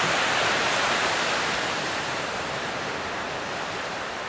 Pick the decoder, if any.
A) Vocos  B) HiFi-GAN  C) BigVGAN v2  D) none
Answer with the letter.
C